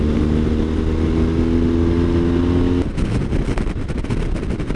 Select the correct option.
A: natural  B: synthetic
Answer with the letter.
A